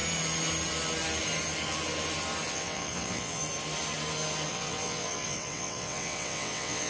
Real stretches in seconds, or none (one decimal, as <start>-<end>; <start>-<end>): 0.0-2.5; 3.4-4.5